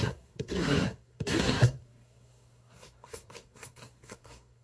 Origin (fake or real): fake